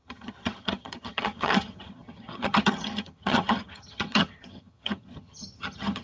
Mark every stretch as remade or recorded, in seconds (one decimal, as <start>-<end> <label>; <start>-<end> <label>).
0.0-6.0 remade